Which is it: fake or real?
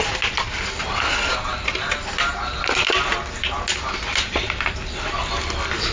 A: real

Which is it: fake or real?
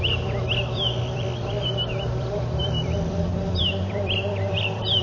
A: fake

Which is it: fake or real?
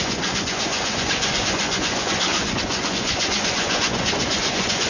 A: fake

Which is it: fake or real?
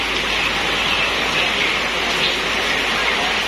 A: real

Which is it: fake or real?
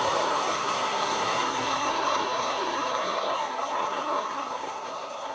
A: fake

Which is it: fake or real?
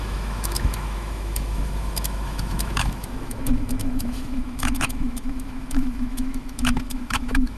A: fake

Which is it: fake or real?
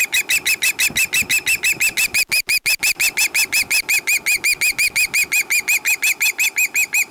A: real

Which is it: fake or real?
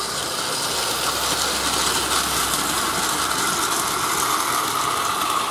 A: real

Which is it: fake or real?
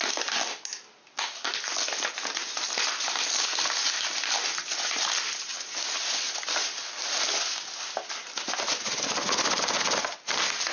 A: real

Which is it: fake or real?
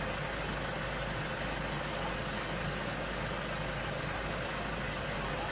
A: real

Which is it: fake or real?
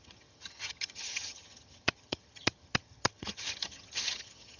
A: fake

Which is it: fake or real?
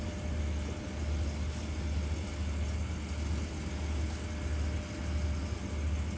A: real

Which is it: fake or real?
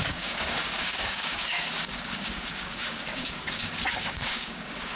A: fake